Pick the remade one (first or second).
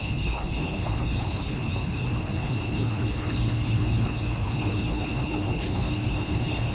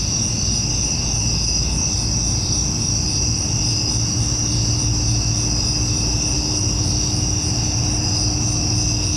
first